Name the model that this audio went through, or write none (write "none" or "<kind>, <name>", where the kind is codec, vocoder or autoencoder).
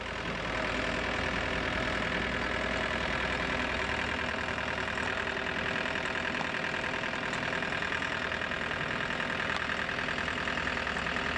none